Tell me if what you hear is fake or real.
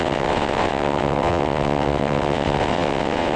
fake